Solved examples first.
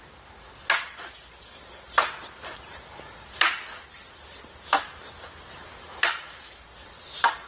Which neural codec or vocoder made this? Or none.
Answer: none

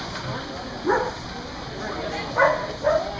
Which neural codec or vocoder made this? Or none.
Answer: none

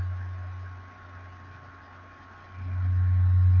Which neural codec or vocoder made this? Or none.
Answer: none